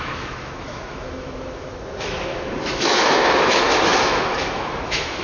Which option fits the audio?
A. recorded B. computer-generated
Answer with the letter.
B